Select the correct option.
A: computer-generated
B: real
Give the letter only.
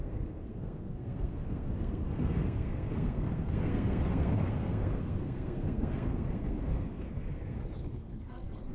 A